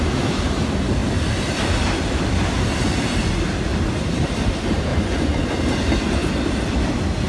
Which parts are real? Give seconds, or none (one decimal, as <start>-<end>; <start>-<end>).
0.0-4.9; 5.4-7.3